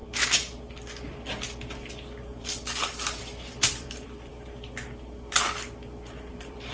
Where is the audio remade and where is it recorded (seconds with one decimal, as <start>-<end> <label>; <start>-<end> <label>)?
0.0-2.4 recorded; 2.4-4.3 remade; 4.3-6.3 recorded; 6.3-6.7 remade